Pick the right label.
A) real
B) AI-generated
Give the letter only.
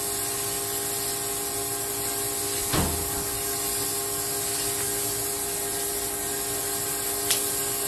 A